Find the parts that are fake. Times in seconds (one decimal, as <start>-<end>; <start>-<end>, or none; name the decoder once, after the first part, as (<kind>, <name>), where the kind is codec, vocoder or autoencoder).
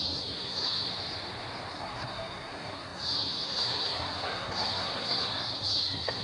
0.0-0.9 (codec, SNAC); 1.7-6.2